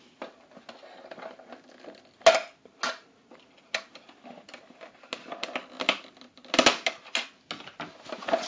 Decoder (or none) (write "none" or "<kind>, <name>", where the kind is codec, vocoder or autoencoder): none